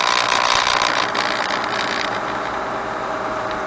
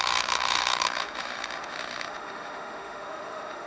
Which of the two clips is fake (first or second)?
second